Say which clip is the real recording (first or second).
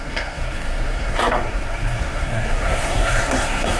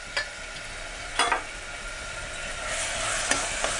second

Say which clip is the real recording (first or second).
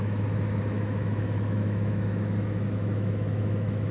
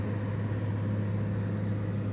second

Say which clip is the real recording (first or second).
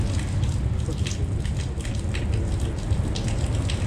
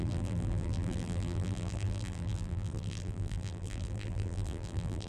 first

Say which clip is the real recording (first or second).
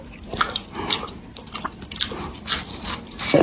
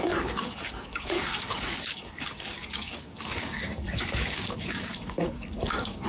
first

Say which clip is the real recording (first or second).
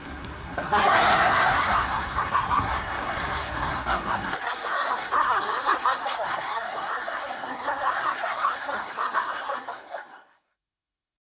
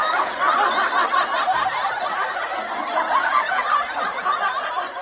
second